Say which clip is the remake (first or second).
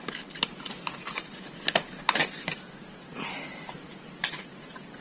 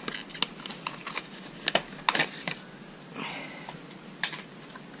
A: first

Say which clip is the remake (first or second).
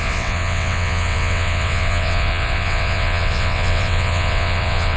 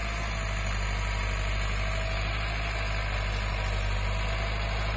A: first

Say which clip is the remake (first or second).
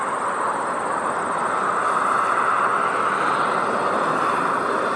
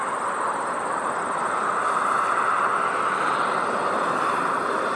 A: second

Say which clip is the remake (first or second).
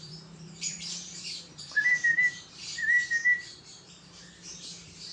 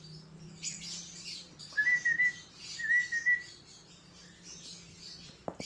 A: first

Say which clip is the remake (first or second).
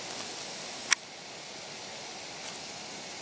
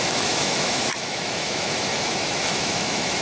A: second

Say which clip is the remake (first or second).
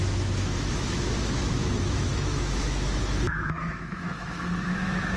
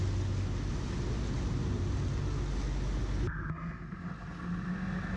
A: first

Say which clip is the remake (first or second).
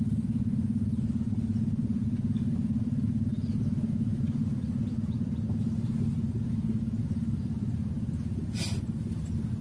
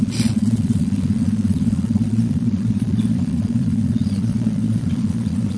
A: second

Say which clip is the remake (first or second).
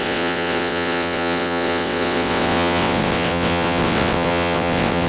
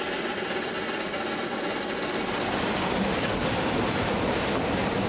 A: first